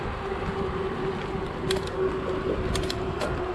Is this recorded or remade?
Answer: recorded